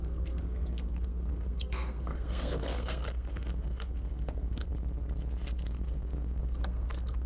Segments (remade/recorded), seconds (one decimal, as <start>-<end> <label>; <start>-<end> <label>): 0.0-4.7 remade; 4.7-5.7 recorded; 5.7-7.3 remade